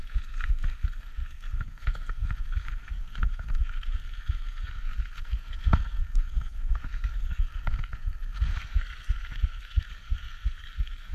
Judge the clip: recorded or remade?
remade